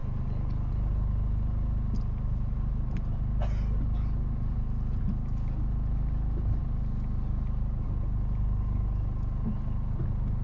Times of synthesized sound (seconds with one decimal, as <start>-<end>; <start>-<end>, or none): none